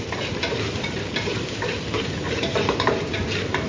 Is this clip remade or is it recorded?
remade